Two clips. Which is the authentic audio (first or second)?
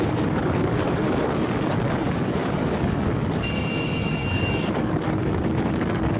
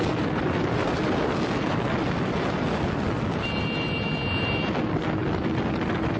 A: second